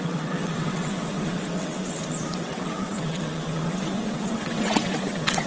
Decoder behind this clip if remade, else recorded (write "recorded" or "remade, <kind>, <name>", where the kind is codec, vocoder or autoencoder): remade, vocoder, WaveNeXt